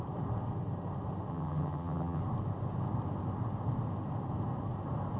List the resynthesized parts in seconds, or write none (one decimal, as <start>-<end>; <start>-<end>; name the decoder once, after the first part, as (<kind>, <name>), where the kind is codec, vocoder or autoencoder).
1.3-2.2 (vocoder, HiFi-GAN)